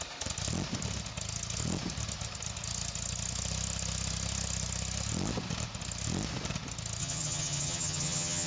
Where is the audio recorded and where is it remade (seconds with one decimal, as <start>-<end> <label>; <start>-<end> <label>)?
0.0-7.0 recorded; 7.0-8.5 remade